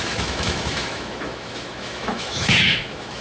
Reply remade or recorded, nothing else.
remade